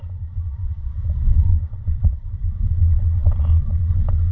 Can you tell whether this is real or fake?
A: fake